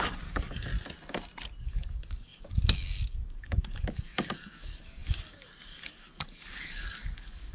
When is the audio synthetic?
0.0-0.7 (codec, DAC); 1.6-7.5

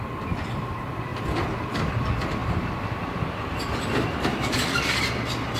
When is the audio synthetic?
4.3-5.0 (codec, DAC)